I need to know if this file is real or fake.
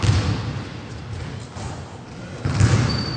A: real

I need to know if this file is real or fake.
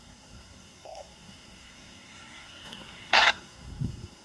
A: fake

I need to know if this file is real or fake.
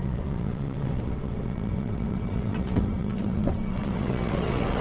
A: fake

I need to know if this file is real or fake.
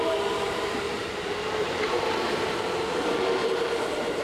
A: fake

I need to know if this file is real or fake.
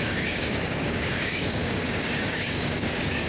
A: fake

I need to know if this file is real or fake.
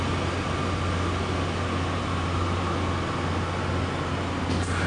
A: real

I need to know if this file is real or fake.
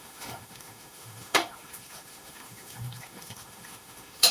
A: fake